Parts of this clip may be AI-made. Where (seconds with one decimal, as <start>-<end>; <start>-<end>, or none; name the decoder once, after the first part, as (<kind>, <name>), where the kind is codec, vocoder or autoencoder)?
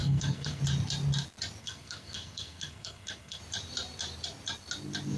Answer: 0.0-0.6 (codec, SNAC); 1.6-3.4